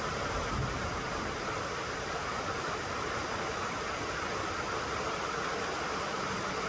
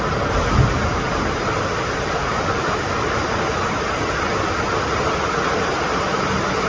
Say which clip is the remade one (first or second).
first